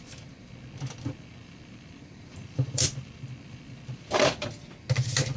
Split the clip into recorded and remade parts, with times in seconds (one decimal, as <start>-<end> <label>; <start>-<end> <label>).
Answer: 0.0-1.4 recorded; 1.4-4.6 remade; 4.6-5.4 recorded